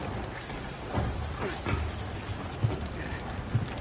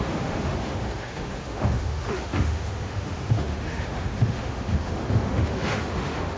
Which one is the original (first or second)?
first